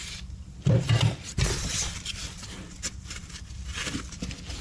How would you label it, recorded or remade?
remade